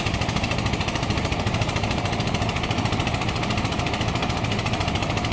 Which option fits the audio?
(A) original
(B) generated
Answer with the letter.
B